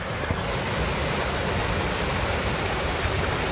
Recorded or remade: recorded